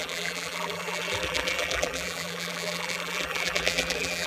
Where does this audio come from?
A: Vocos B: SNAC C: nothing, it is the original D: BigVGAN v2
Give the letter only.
D